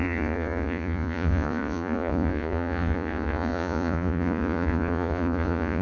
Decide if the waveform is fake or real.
fake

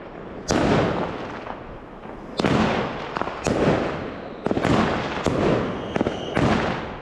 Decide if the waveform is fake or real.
real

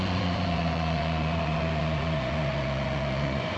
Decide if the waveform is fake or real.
fake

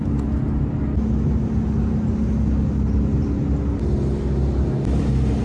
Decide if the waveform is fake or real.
real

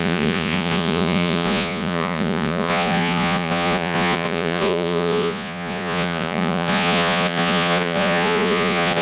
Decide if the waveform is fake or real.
fake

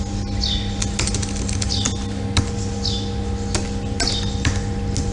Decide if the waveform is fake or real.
real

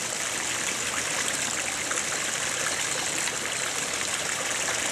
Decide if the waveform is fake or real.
real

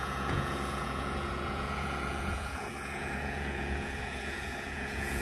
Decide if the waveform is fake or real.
fake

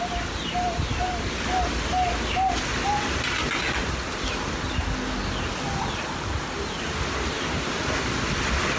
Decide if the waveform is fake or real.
real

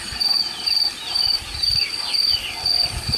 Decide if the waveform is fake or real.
real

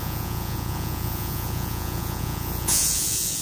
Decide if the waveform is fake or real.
fake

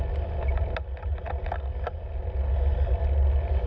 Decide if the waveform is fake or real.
real